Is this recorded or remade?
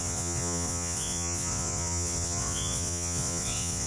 remade